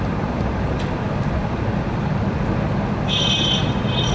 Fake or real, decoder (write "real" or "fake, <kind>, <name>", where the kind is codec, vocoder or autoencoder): real